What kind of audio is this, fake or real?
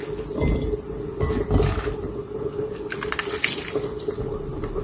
real